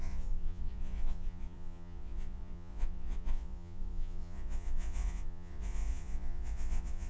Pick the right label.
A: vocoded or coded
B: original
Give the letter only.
A